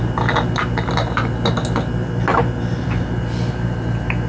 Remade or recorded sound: recorded